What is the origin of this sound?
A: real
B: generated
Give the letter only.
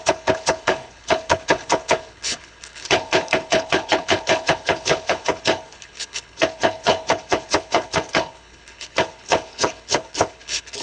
B